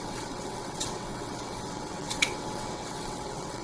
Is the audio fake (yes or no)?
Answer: yes